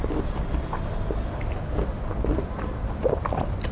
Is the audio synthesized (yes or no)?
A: yes